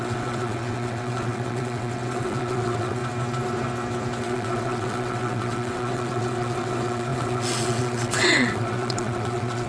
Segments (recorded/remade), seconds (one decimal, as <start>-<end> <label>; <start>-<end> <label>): 0.0-3.0 remade; 3.0-4.2 recorded; 4.2-9.7 remade